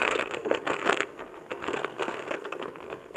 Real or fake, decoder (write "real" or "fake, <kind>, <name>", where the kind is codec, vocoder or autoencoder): fake, codec, SNAC